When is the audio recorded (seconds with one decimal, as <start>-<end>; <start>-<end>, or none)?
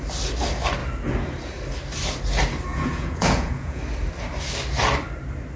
0.0-2.7; 3.8-5.6